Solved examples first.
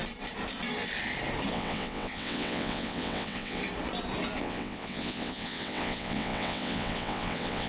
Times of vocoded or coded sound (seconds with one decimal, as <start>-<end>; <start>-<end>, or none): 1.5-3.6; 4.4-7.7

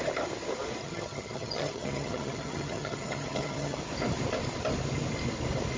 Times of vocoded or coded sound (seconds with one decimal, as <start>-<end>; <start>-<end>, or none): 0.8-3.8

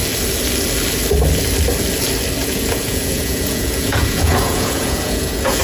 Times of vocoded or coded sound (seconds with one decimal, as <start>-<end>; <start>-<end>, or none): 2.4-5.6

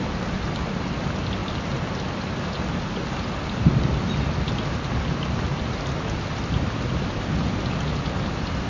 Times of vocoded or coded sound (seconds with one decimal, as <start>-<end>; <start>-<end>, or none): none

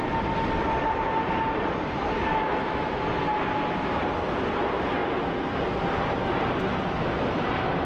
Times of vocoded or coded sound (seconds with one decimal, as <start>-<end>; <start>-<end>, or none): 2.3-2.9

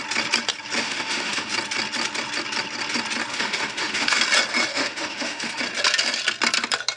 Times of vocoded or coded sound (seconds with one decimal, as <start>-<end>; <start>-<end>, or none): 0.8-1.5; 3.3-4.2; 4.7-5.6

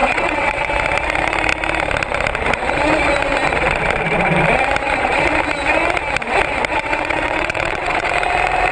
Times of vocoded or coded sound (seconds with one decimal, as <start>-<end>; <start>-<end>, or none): 0.0-0.7; 6.7-8.1

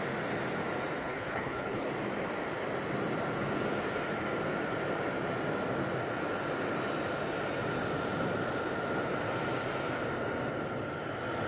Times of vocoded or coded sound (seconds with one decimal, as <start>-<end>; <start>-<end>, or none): 1.0-1.9